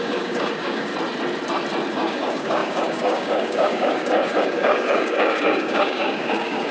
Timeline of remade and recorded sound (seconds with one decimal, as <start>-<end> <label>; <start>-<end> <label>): 0.0-0.9 remade; 0.9-1.9 recorded; 1.9-6.7 remade